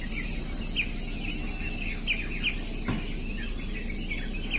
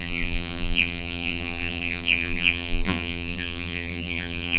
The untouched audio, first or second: first